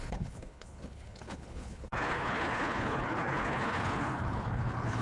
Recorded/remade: remade